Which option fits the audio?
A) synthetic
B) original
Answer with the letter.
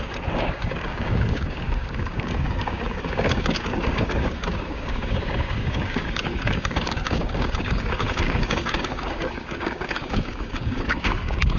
A